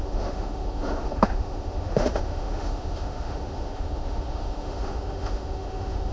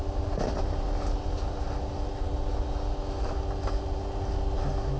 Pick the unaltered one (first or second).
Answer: second